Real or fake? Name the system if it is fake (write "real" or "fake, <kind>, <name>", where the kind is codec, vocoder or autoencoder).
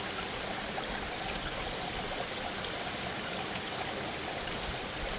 real